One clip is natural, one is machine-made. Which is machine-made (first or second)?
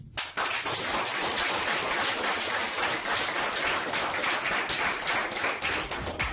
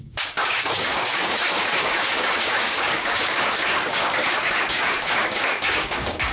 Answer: second